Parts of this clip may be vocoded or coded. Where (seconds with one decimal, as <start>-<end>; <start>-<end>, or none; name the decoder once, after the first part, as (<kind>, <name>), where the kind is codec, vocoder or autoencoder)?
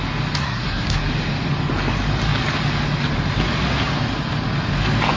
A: 0.4-1.1 (codec, SNAC)